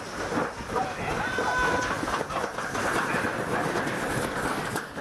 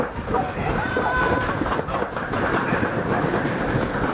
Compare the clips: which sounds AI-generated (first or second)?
second